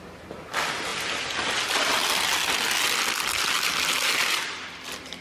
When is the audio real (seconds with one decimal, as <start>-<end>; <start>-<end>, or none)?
0.0-5.2